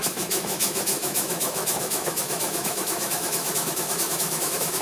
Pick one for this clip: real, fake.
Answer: fake